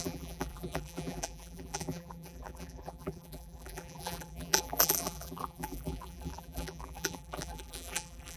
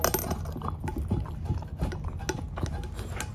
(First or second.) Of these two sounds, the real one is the second